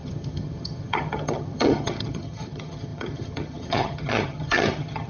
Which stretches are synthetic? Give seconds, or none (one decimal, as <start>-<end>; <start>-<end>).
0.0-5.1